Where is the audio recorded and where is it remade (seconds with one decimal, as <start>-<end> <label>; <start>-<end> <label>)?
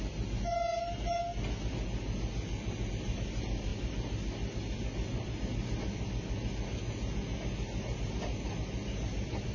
0.0-9.5 recorded